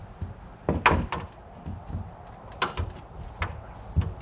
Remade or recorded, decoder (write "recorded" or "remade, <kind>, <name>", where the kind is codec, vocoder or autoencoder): recorded